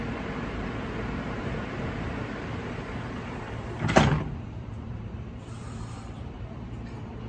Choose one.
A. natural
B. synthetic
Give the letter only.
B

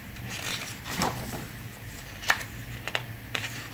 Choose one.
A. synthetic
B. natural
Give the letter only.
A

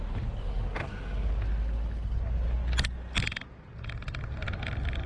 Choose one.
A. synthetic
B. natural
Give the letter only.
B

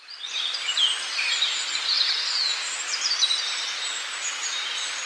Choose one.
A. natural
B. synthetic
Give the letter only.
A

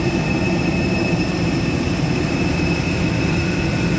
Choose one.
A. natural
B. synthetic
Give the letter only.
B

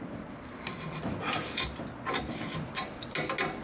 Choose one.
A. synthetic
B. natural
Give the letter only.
B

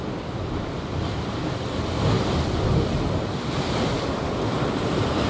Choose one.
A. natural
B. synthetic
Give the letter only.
A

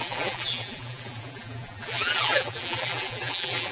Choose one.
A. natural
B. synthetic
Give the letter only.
B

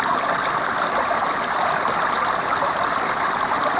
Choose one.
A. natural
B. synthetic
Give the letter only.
A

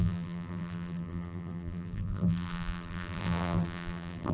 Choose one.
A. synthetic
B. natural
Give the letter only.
A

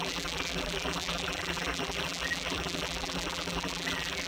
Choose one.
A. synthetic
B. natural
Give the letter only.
A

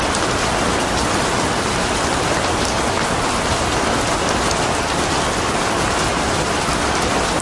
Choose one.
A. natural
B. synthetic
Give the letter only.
A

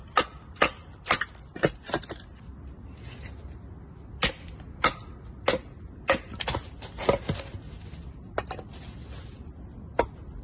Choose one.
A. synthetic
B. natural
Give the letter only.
B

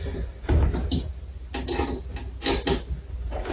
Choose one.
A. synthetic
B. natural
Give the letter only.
B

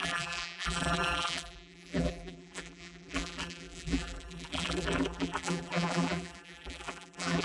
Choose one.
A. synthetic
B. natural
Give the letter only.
A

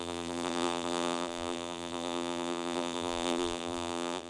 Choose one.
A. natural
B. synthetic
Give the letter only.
B